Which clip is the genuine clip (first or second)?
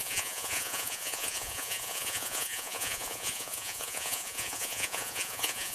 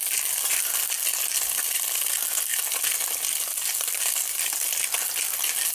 second